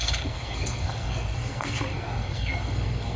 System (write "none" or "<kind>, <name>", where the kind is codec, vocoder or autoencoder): codec, SNAC